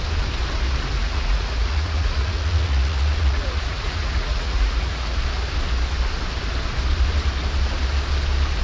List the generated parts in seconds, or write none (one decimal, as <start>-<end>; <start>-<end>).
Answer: 1.0-5.2